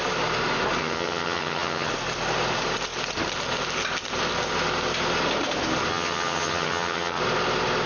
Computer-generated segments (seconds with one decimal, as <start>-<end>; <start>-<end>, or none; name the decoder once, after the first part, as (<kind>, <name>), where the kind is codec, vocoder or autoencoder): 0.8-1.9 (vocoder, HiFi-GAN); 5.9-7.2